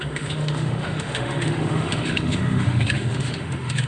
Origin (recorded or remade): remade